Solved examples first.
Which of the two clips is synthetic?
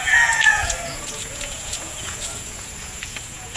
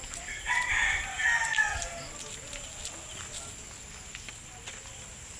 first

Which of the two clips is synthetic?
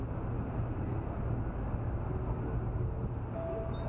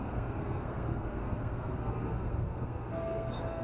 second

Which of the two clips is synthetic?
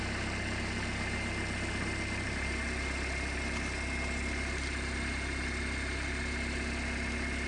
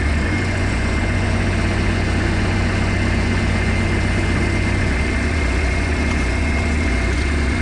second